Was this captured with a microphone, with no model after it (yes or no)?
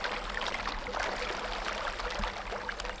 yes